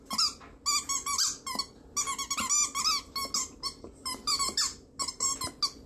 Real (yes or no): yes